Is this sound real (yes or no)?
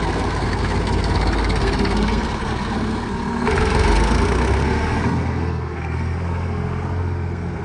no